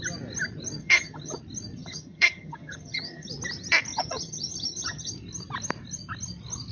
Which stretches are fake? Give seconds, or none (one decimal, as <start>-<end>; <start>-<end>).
0.8-1.4; 1.8-3.3; 3.9-5.1